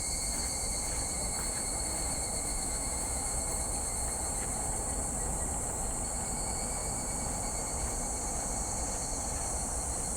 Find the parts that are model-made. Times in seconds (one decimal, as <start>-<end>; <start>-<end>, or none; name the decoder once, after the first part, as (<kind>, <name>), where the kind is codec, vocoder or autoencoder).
2.5-3.4 (autoencoder, DAC-VAE)